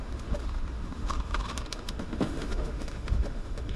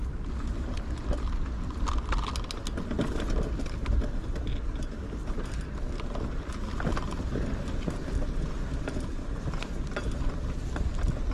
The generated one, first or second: first